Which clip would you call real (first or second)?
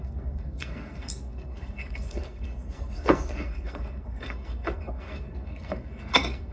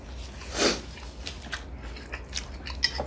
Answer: second